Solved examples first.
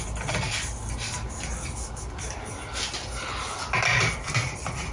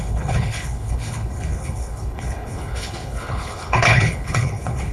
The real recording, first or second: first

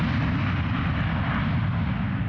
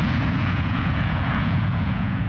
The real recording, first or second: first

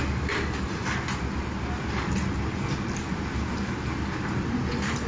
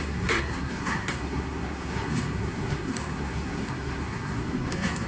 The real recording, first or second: first